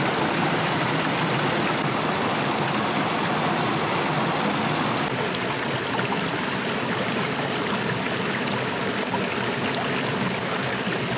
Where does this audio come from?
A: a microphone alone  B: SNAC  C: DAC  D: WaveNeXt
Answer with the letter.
A